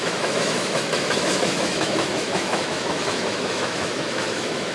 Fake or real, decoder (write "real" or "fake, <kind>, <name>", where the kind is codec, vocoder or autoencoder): fake, autoencoder, DAC-VAE